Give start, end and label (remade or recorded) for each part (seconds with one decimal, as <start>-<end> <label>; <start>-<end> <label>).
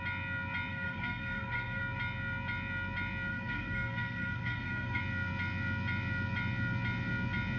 0.0-0.7 recorded; 0.7-1.8 remade; 1.8-3.3 recorded; 3.3-5.0 remade; 5.0-7.6 recorded